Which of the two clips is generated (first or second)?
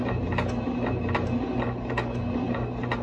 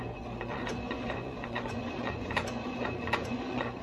second